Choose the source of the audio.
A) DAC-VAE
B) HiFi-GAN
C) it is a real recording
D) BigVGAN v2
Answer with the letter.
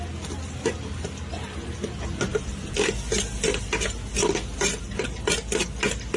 C